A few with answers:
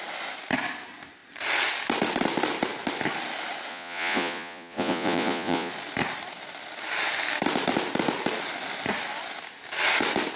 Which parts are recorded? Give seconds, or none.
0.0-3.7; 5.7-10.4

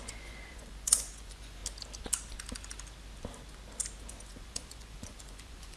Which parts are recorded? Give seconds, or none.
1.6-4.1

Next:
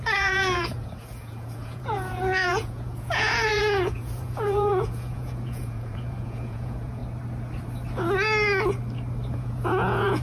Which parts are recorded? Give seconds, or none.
7.0-9.3